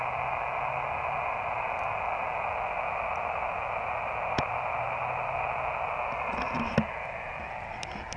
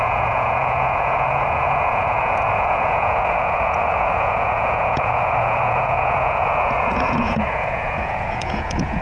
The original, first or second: first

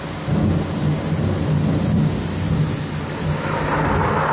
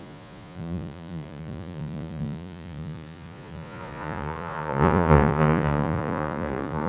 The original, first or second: first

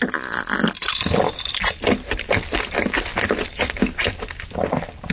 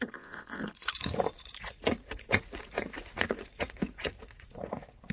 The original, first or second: first